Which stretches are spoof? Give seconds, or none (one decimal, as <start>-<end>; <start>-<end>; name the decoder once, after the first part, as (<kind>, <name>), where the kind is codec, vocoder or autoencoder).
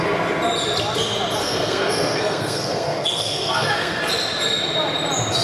1.4-4.0 (codec, SNAC)